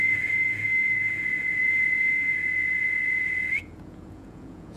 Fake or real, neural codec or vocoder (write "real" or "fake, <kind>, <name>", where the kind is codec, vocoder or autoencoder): fake, vocoder, Vocos